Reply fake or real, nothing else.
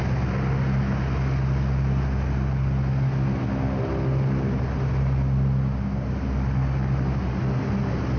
real